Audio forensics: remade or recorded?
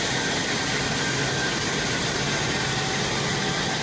recorded